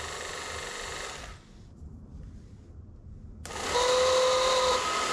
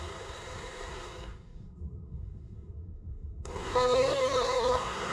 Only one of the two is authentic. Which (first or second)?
first